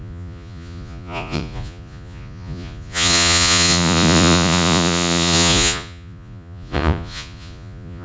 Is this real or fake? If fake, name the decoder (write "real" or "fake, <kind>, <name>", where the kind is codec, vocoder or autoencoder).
fake, vocoder, Vocos